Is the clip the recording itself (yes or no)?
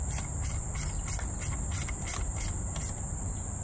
yes